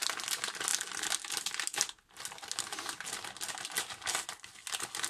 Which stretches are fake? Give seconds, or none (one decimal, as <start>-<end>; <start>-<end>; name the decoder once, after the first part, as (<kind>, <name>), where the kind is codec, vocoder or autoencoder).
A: none